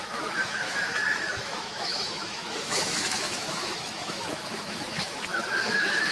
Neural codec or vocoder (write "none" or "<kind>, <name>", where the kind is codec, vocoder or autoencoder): autoencoder, DAC-VAE